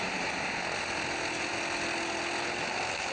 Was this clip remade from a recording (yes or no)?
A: no